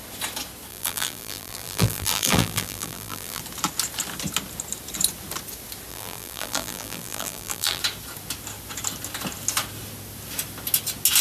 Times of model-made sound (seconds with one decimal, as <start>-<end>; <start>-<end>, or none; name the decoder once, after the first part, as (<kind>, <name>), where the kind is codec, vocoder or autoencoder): 0.7-3.4 (vocoder, BigVGAN v2); 5.9-7.8